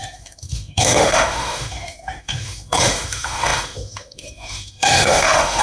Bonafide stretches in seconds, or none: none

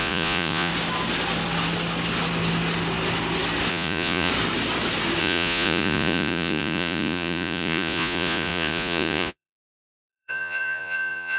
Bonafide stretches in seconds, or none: 0.7-3.7; 4.3-5.2

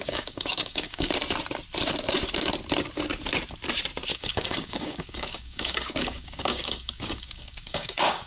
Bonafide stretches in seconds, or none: 1.1-4.1